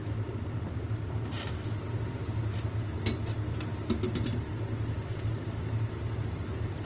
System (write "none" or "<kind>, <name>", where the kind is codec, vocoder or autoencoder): none